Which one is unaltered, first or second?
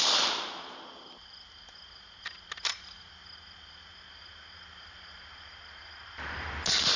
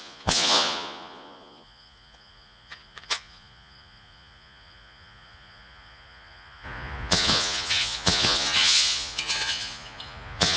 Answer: first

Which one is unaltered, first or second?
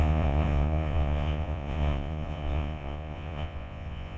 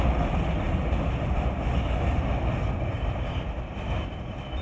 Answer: second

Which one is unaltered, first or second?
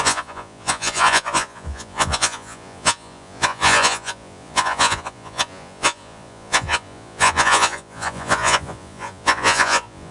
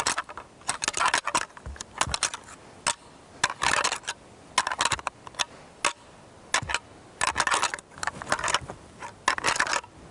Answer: second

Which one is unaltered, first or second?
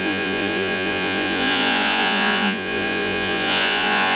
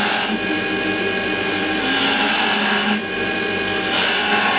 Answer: second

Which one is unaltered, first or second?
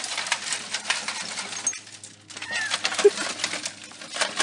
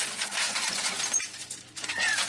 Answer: first